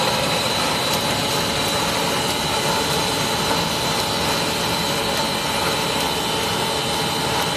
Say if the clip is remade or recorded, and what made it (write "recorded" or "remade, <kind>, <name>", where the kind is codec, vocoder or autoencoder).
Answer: recorded